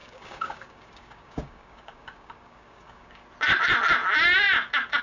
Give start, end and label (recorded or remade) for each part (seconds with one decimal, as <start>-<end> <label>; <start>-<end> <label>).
0.0-3.2 remade; 3.2-5.0 recorded